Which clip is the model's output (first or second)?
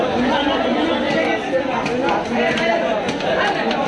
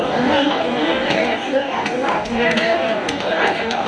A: second